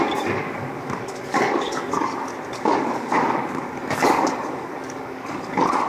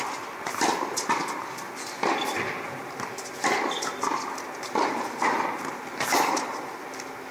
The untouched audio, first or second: second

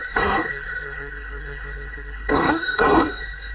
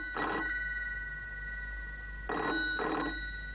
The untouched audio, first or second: second